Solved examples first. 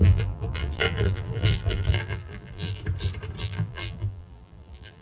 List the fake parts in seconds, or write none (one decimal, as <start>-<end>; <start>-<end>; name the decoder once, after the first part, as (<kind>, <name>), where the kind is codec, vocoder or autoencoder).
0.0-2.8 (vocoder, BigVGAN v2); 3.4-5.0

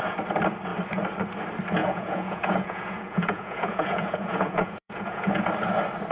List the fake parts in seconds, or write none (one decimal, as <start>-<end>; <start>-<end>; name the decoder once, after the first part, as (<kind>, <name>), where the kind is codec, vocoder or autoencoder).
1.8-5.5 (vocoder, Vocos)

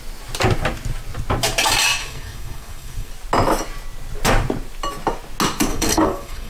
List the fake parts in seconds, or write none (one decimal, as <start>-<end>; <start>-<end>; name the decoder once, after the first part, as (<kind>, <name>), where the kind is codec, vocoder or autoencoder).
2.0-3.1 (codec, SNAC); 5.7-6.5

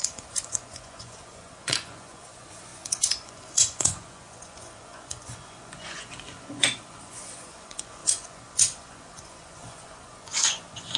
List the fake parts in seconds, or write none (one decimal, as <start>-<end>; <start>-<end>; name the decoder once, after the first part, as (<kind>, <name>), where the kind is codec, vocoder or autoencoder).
0.0-11.0 (vocoder, Vocos)

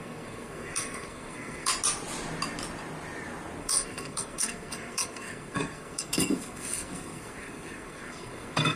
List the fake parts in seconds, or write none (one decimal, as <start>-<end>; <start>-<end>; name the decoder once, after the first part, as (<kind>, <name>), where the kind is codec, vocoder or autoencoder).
0.0-1.7 (codec, SNAC); 3.6-8.8

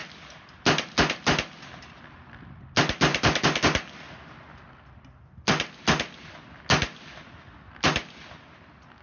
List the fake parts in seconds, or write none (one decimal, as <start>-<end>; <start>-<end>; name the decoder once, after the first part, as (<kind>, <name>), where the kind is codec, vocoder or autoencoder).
none